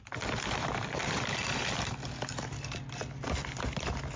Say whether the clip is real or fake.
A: real